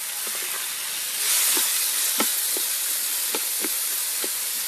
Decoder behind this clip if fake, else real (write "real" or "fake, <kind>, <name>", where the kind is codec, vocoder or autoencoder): real